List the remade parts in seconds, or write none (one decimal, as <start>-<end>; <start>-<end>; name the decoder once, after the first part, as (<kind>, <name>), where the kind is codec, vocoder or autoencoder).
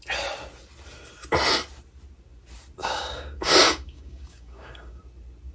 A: 2.8-5.0 (codec, DAC)